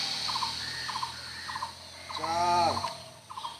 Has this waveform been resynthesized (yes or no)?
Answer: no